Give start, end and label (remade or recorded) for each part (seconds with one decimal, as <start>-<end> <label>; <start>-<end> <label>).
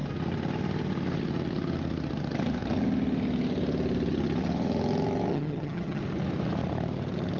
0.0-5.3 recorded; 5.3-6.0 remade; 6.0-7.4 recorded